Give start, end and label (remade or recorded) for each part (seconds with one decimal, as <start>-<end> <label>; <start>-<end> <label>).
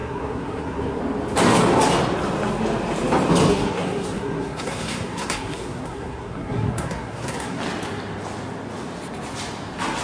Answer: 0.0-1.0 remade; 1.0-3.5 recorded; 3.5-7.6 remade; 7.6-10.0 recorded